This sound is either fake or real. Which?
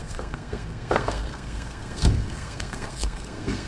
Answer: fake